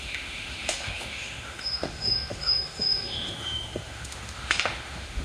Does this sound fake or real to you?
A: fake